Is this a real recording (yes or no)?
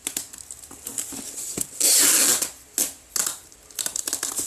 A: yes